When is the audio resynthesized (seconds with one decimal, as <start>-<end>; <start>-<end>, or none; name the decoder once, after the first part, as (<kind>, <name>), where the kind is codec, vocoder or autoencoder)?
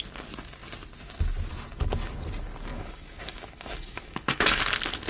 2.7-4.6 (autoencoder, DAC-VAE)